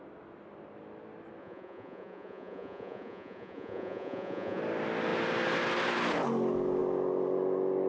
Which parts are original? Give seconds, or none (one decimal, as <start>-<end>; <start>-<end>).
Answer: 0.0-1.4; 4.6-7.9